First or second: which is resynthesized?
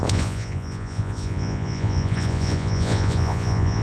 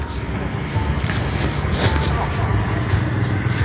first